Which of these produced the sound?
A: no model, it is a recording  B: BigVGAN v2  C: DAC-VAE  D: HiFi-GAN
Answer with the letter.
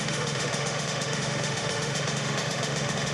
C